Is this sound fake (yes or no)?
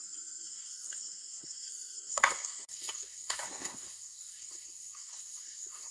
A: yes